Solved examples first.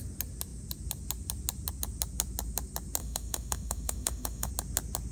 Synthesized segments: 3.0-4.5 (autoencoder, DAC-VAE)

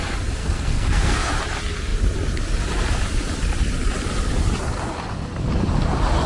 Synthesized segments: 0.4-1.3 (codec, SNAC)

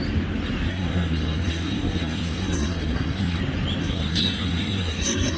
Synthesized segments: 0.7-3.4 (codec, SNAC); 3.8-5.4

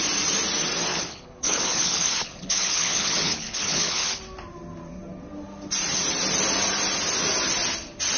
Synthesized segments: 0.9-4.2 (codec, HILCodec)

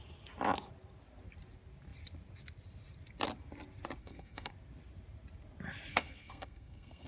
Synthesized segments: 4.0-4.5 (codec, SNAC); 5.9-7.1

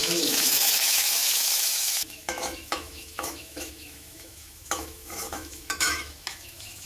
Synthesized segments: 0.0-6.9 (autoencoder, DAC-VAE)

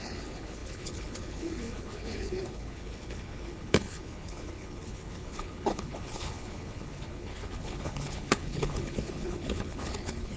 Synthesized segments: 0.0-10.4 (codec, HILCodec)